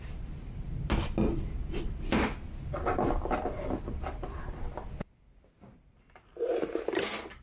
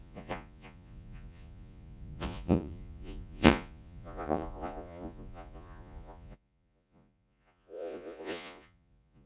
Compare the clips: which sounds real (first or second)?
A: first